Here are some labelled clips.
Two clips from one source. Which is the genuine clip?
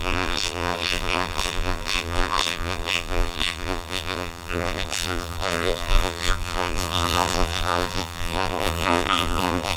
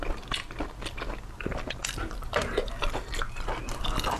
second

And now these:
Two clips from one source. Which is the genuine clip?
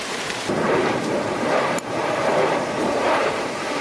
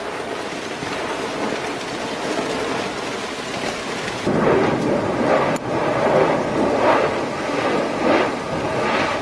second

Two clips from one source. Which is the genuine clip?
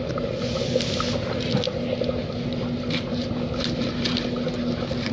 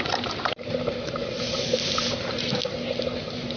first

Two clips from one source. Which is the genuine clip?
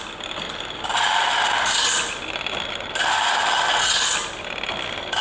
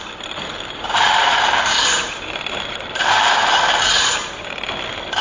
first